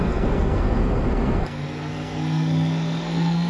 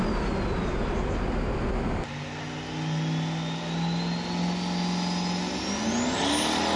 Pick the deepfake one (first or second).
first